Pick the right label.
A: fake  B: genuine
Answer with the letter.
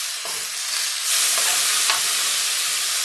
B